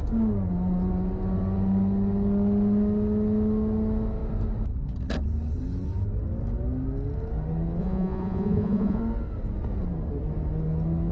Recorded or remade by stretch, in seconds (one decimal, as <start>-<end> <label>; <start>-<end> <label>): 0.0-7.8 recorded; 7.8-9.0 remade; 9.0-11.1 recorded